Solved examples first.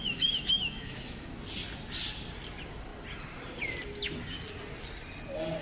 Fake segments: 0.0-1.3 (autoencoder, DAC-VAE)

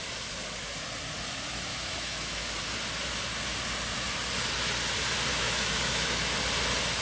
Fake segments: 1.7-2.6 (autoencoder, DAC-VAE); 5.3-6.3

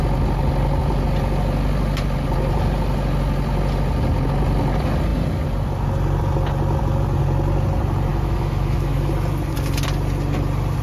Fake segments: 8.1-9.1 (autoencoder, DAC-VAE)

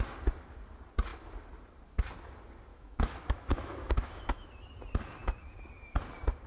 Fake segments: 2.7-4.5 (autoencoder, DAC-VAE)

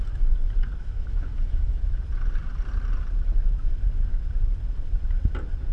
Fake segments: 0.8-2.0 (autoencoder, DAC-VAE)

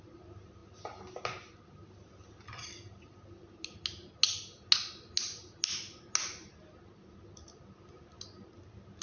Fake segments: none

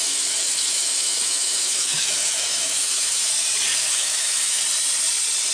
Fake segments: 0.0-3.3 (autoencoder, DAC-VAE); 3.7-4.6